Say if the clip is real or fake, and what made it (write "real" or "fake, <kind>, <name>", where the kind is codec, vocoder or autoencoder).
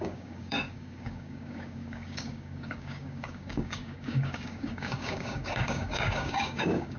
fake, codec, DAC